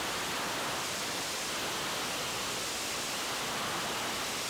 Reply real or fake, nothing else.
real